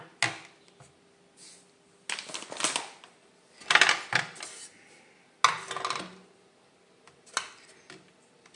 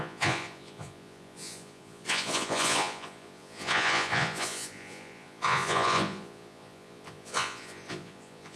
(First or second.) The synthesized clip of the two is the second